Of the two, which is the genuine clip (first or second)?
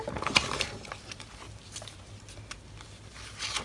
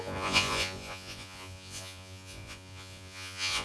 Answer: first